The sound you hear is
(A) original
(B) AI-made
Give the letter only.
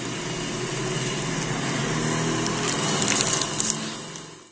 A